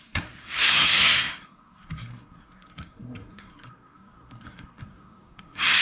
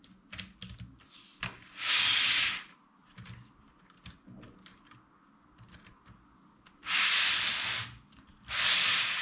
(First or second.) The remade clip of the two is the first